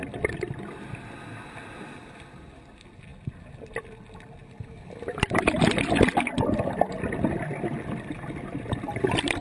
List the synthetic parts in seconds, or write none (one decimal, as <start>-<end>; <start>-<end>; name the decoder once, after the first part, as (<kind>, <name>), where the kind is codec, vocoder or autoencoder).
3.1-3.8 (vocoder, BigVGAN v2)